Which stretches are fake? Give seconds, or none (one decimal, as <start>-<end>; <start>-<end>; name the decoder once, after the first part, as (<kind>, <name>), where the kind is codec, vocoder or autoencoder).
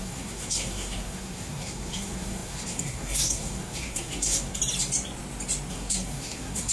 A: 0.0-4.6 (codec, SNAC); 5.7-6.7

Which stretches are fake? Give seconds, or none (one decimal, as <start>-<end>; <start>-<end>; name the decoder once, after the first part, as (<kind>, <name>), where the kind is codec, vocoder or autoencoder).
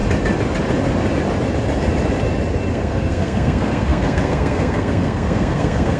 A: 2.7-6.0 (codec, SNAC)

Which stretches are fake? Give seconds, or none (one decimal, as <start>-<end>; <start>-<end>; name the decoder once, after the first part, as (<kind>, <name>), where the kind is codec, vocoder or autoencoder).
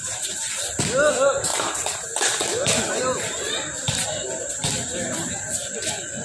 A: 0.0-0.8 (vocoder, BigVGAN v2); 1.5-5.0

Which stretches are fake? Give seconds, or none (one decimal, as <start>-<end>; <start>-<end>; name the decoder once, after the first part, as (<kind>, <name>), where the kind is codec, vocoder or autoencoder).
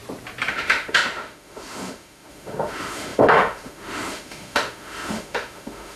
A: 0.5-6.0 (autoencoder, DAC-VAE)